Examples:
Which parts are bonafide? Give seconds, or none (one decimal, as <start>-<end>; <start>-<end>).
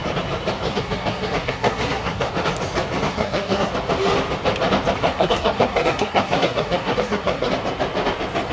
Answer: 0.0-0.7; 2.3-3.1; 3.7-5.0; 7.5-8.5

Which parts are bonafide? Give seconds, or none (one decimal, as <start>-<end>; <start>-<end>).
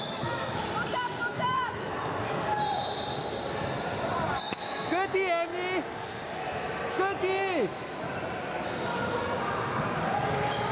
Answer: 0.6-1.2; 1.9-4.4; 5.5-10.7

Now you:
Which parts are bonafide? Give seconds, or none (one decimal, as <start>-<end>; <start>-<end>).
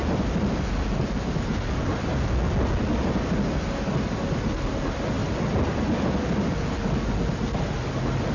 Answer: 0.0-8.3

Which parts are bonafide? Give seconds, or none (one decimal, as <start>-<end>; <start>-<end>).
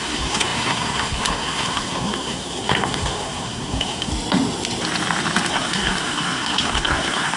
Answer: 4.1-5.5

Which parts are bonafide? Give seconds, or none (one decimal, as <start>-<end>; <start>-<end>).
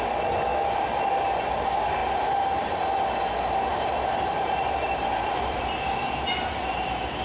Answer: 0.0-0.5; 1.1-2.0; 2.7-3.7; 5.6-7.2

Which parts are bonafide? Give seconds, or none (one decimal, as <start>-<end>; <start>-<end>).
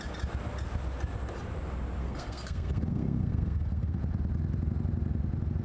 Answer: 0.0-2.0; 4.0-5.6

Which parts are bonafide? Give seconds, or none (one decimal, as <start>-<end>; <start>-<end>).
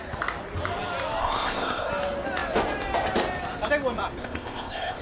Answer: 0.0-1.2; 1.9-4.2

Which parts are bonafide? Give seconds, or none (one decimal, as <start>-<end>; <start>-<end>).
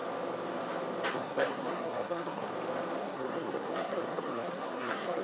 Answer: 0.0-1.1; 2.5-3.0